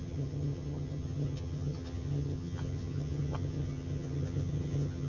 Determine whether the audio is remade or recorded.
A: remade